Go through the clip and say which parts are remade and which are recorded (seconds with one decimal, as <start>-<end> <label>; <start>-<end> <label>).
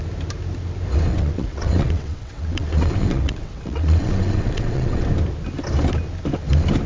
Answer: 0.0-1.1 recorded; 1.1-5.1 remade; 5.1-6.9 recorded